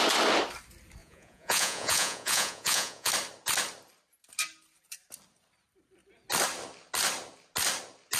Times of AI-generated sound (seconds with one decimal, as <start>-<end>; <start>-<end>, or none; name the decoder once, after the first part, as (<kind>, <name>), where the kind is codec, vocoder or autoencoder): 1.0-3.1 (vocoder, Vocos)